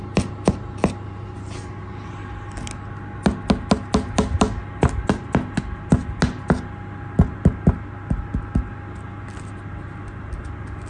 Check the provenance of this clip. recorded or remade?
recorded